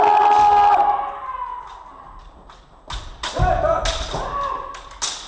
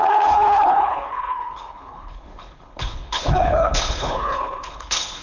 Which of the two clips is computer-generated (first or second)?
second